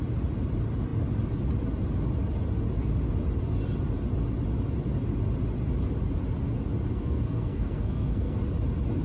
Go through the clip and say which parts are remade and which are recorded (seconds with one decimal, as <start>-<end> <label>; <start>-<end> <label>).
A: 0.0-6.9 recorded; 6.9-8.4 remade; 8.4-9.0 recorded